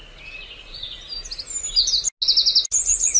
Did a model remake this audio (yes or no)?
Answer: no